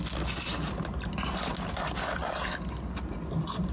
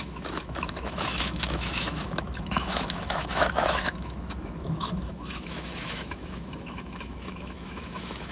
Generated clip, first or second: second